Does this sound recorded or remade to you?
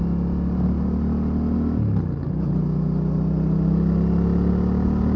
recorded